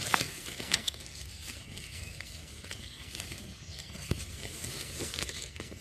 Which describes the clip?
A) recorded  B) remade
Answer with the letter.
B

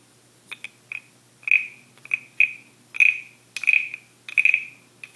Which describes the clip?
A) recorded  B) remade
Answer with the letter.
A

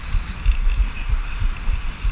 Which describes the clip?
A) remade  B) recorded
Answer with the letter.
B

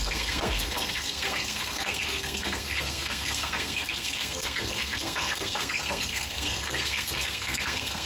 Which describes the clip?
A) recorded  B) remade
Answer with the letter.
B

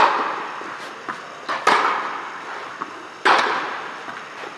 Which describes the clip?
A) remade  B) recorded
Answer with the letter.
B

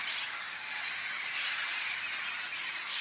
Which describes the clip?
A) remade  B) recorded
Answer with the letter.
B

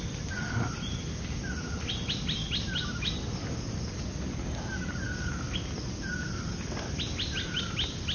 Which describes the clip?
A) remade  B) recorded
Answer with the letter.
B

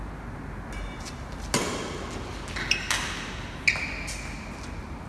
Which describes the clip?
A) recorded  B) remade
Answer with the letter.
A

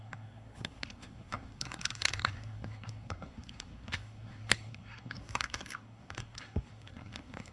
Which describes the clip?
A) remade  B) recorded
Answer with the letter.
A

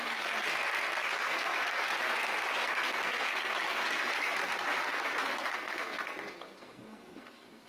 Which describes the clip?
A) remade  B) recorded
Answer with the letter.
A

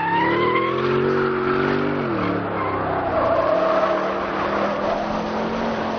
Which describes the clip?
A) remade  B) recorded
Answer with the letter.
B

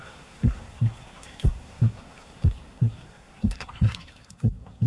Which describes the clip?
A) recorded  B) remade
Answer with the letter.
B